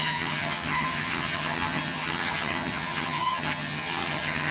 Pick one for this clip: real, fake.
fake